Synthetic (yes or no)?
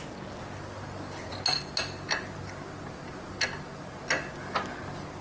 no